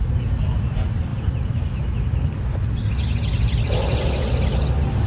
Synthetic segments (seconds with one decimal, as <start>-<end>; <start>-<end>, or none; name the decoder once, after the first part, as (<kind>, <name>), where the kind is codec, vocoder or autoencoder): none